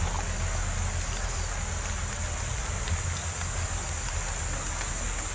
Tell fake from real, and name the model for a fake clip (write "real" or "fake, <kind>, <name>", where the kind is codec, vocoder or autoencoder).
real